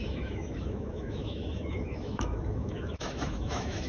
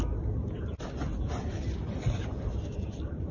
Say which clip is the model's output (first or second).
first